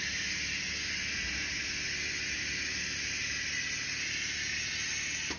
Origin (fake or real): real